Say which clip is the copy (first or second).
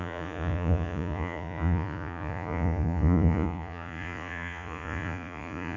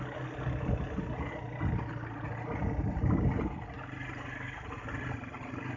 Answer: first